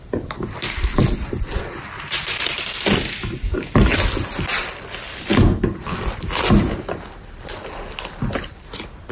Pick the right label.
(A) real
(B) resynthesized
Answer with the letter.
A